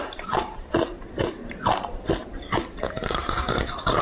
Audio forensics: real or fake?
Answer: fake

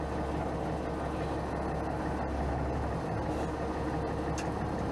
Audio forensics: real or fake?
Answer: real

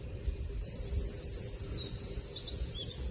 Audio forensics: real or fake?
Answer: real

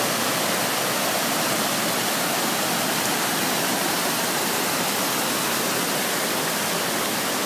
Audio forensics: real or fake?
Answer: real